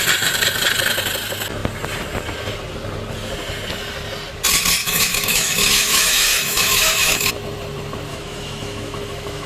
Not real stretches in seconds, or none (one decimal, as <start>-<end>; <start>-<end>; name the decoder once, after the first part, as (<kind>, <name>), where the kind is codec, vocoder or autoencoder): 4.8-7.3 (autoencoder, DAC-VAE); 8.1-9.5